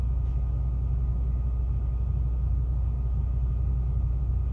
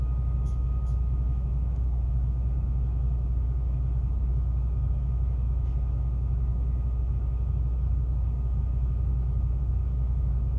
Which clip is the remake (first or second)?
second